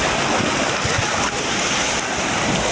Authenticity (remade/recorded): recorded